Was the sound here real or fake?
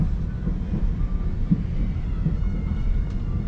real